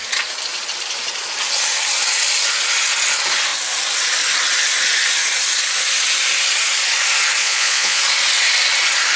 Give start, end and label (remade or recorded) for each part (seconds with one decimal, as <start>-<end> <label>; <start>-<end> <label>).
0.0-7.4 recorded; 7.4-8.0 remade; 8.0-9.2 recorded